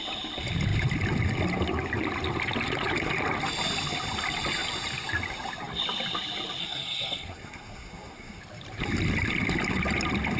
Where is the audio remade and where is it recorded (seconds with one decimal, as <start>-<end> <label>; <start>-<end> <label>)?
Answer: 0.0-6.6 recorded; 6.6-8.4 remade; 8.4-10.4 recorded